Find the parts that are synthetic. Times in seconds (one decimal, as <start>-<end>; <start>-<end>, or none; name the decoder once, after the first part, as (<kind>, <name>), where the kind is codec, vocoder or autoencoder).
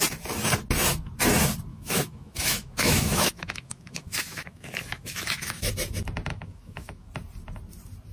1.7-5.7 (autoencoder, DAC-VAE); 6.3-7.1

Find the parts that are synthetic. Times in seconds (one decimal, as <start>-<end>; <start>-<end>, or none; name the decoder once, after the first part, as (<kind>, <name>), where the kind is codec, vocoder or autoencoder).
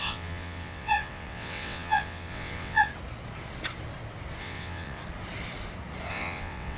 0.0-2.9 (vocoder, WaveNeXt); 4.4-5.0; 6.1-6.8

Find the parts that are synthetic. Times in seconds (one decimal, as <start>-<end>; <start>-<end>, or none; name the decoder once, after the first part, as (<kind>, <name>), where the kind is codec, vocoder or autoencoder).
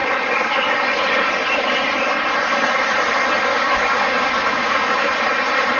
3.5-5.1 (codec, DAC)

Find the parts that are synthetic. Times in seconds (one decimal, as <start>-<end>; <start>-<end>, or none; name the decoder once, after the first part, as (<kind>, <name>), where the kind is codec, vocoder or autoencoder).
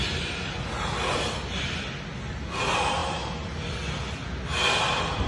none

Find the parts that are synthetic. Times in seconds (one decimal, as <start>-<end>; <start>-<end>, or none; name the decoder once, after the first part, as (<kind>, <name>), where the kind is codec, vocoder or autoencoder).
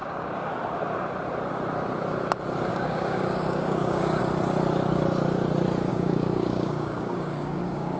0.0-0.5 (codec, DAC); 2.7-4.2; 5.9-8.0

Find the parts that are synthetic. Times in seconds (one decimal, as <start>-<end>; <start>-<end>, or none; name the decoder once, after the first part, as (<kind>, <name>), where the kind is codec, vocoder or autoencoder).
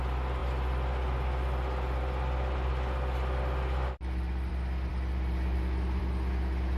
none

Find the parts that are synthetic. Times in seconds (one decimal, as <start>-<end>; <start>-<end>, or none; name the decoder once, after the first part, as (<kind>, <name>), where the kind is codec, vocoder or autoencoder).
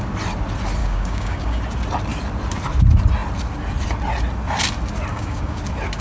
0.8-1.6 (codec, DAC); 5.1-5.6